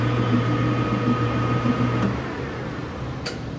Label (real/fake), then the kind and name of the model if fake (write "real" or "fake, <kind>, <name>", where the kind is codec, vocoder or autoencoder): fake, vocoder, BigVGAN v2